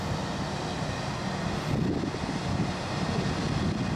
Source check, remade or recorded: recorded